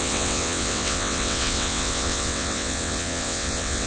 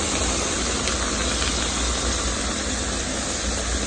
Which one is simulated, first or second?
first